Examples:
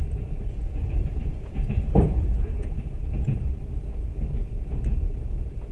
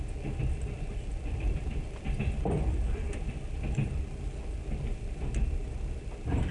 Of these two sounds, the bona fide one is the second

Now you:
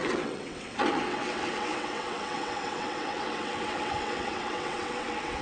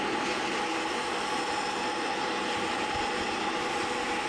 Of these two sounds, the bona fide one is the second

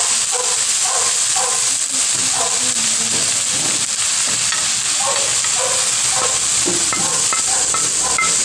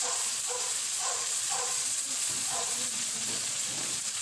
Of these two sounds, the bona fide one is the first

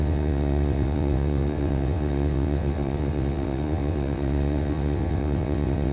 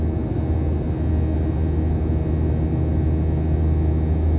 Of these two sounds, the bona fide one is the second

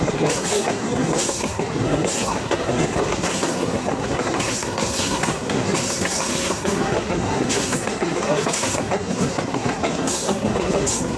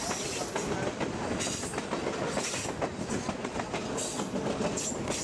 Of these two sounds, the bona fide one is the second